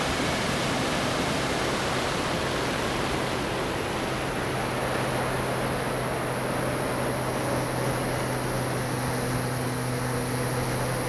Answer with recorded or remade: recorded